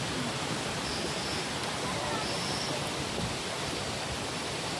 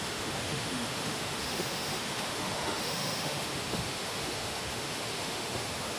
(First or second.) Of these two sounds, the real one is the first